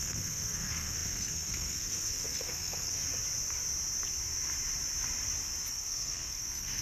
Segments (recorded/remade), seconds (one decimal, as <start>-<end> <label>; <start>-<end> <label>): 0.0-3.0 remade; 3.0-5.7 recorded; 5.7-6.8 remade